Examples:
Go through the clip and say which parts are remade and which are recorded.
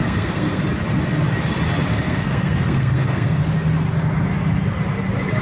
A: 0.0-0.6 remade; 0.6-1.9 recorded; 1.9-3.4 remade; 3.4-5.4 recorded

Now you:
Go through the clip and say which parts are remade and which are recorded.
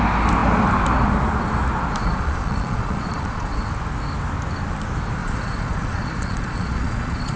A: 0.0-2.0 recorded; 2.0-3.7 remade; 3.7-5.2 recorded; 5.2-7.4 remade